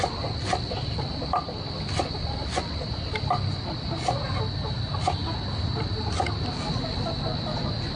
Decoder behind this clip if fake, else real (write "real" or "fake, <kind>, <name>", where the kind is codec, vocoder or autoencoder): real